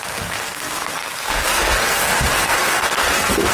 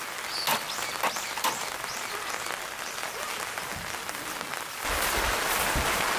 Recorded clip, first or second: second